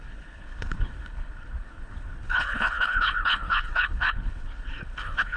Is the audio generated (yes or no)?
yes